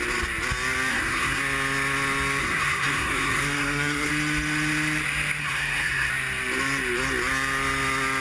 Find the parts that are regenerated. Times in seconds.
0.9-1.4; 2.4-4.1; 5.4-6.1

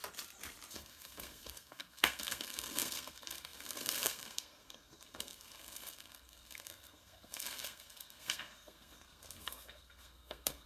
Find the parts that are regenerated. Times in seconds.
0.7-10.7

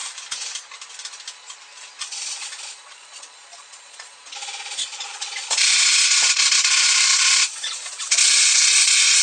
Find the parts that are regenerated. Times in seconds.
2.0-9.2

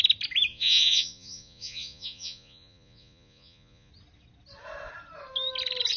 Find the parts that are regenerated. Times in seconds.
0.5-3.9

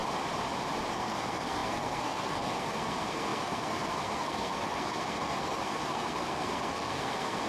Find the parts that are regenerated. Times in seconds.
0.9-7.5

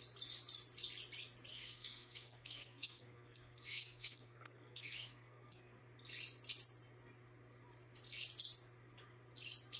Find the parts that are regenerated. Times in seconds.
1.5-5.8

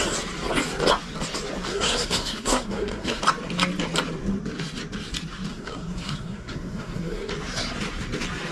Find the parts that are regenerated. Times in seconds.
1.7-3.2; 5.5-7.3

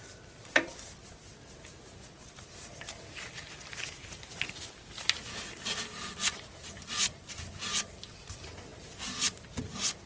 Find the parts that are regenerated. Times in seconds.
none